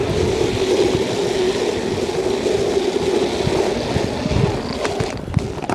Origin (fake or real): real